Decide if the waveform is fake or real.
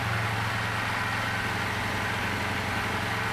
real